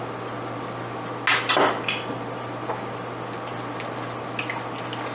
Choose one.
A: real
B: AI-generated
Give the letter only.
A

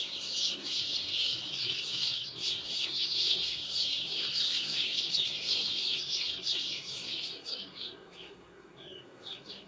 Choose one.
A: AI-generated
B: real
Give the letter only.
A